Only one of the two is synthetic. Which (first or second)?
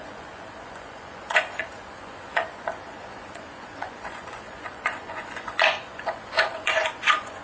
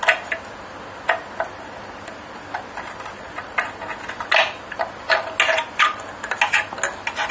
first